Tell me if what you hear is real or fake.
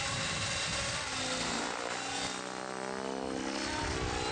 real